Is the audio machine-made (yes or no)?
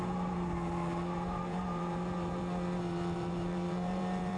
yes